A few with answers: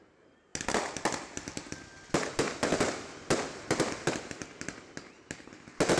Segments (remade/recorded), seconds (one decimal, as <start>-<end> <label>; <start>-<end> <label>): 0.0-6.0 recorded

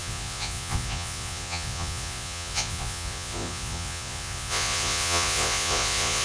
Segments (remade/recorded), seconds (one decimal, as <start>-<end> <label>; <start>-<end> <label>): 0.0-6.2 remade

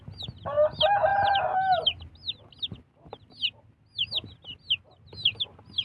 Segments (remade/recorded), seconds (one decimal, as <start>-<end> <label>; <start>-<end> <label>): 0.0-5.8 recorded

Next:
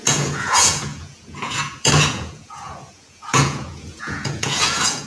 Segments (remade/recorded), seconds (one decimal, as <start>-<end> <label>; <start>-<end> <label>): 0.0-5.1 remade